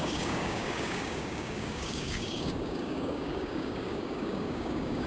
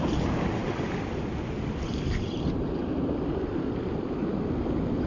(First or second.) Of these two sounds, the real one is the second